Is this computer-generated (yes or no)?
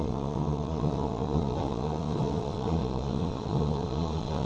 yes